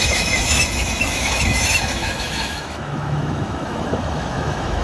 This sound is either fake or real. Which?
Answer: fake